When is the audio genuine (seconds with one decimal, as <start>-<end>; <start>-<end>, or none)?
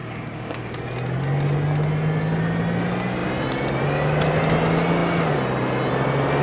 0.8-6.4